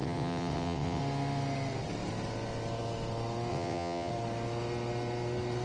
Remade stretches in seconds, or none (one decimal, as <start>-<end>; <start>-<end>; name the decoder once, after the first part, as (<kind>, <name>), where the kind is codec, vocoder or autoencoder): 0.0-1.0 (vocoder, WaveNeXt); 3.5-4.1